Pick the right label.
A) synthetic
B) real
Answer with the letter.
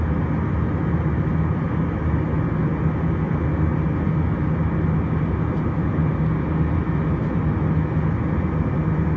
B